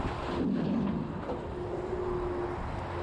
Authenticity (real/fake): real